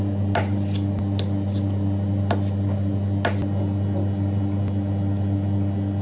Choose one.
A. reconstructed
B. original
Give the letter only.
B